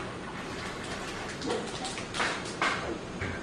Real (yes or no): no